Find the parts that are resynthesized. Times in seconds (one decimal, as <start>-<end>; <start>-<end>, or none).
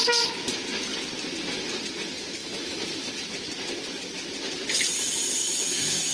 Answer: 2.4-3.1; 5.4-6.1